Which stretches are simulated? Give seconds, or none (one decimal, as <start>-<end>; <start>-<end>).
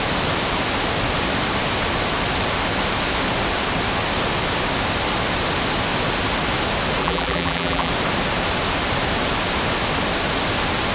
7.0-7.9